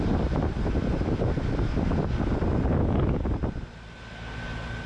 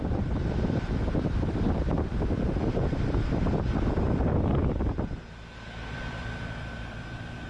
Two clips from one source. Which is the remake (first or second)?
second